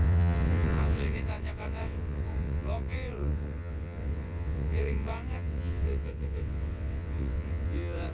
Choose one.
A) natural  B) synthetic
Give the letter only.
B